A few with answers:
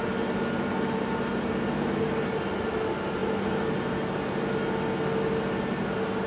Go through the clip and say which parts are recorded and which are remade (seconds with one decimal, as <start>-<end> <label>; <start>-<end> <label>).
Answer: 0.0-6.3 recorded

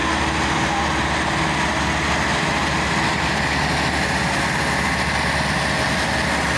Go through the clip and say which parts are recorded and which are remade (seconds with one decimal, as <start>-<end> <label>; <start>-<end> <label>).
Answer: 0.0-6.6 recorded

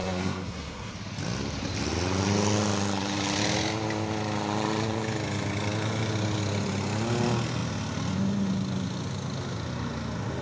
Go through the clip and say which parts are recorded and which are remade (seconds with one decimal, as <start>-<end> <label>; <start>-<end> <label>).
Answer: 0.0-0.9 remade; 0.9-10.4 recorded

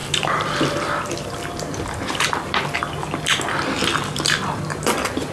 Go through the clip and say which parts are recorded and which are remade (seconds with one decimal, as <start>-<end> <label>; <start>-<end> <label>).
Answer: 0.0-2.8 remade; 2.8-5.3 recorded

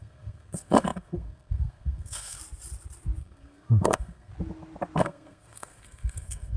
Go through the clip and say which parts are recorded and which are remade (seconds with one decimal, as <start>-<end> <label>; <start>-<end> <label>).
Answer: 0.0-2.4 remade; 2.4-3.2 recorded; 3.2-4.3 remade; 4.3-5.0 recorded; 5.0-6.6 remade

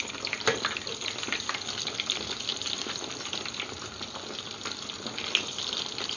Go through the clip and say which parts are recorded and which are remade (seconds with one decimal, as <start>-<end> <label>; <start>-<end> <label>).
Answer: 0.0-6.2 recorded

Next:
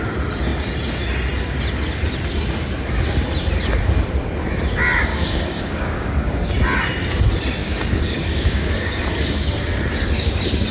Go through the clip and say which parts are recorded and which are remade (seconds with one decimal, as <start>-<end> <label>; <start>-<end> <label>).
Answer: 0.0-5.1 recorded; 5.1-6.5 remade; 6.5-7.6 recorded; 7.6-9.0 remade; 9.0-10.7 recorded

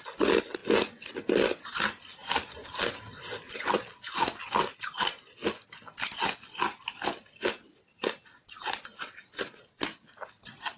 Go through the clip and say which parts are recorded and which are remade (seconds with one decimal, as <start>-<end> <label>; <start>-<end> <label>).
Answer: 0.0-10.8 recorded